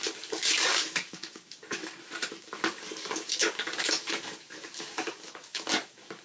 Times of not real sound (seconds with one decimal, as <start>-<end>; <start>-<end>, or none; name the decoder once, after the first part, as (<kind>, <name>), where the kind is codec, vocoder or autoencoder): 0.0-1.8 (codec, DAC); 2.3-6.2

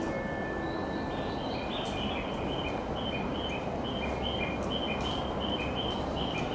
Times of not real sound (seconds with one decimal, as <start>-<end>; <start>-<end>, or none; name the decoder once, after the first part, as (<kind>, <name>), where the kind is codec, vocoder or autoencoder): none

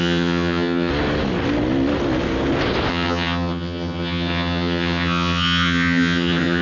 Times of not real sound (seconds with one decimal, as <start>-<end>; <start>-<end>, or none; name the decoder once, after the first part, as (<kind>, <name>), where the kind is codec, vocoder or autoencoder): 0.0-0.9 (vocoder, HiFi-GAN); 2.9-6.6

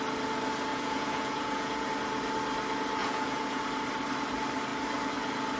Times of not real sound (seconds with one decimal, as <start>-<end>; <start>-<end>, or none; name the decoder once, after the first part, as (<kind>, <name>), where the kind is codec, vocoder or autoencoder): 0.7-1.9 (vocoder, Vocos); 3.0-3.6